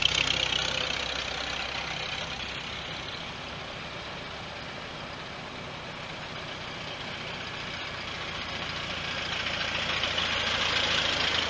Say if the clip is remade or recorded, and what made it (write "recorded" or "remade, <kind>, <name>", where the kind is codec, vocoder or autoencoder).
recorded